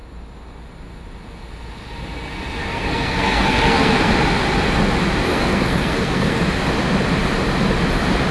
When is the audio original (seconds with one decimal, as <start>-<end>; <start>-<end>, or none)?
0.0-2.6; 4.1-5.3; 6.4-8.3